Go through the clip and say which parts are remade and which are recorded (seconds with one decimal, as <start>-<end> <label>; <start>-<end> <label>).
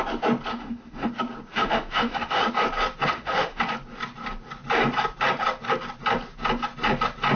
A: 0.0-0.5 recorded; 0.5-1.1 remade; 1.1-1.5 recorded; 1.5-2.4 remade; 2.4-3.1 recorded; 3.1-3.6 remade; 3.6-7.4 recorded